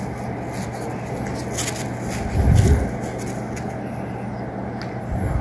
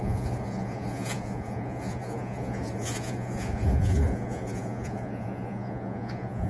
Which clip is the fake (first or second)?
second